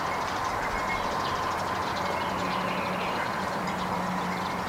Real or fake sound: real